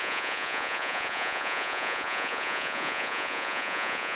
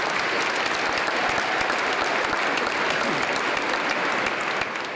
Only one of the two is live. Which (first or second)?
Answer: second